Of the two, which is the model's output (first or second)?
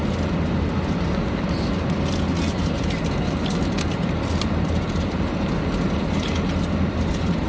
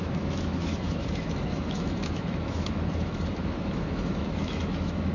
second